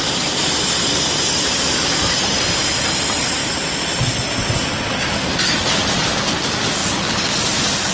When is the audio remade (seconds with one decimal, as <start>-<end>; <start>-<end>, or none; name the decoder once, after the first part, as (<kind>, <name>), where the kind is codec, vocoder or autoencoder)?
none